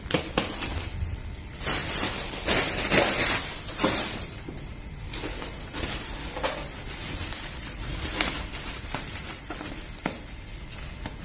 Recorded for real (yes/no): yes